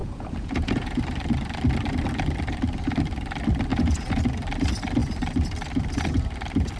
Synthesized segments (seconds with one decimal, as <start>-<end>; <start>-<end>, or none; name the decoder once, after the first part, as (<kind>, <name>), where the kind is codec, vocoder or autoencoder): 0.0-1.0 (vocoder, Vocos); 3.7-4.2